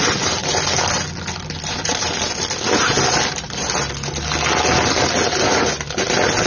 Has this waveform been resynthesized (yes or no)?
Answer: no